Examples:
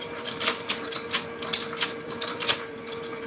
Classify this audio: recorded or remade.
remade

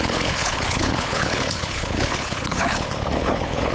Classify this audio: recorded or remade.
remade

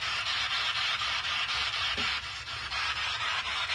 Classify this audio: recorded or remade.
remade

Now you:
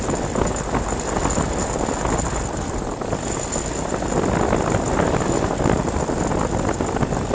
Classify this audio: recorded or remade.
recorded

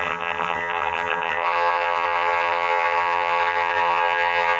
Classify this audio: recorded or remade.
remade